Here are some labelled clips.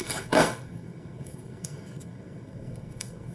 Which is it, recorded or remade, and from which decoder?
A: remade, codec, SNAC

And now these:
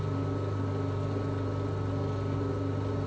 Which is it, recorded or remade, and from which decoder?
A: recorded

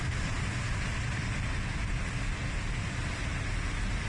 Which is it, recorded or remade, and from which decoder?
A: recorded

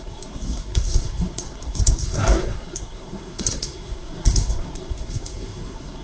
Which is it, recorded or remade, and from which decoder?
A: remade, codec, SNAC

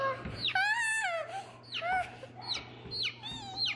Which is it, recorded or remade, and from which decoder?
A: recorded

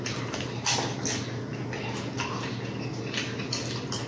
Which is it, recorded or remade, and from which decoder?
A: recorded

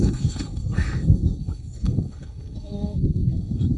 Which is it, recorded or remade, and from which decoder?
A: remade, codec, SNAC